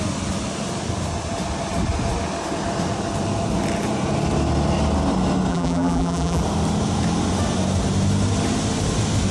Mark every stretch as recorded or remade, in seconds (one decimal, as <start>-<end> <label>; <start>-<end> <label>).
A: 0.0-5.5 recorded; 5.5-6.4 remade; 6.4-9.3 recorded

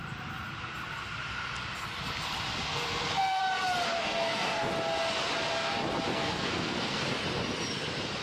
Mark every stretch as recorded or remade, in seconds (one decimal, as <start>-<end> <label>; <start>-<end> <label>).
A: 0.0-2.7 recorded; 2.7-3.4 remade; 3.4-4.0 recorded; 4.0-4.7 remade; 4.7-6.1 recorded; 6.1-7.0 remade; 7.0-8.2 recorded